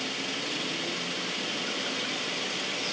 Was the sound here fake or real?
real